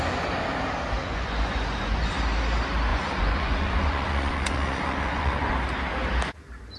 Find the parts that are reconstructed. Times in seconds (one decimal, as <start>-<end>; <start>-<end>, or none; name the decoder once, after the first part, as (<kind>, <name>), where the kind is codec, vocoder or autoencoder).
1.0-2.1 (vocoder, Vocos); 2.9-5.5